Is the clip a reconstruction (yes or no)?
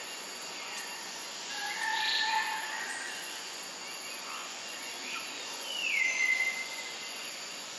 yes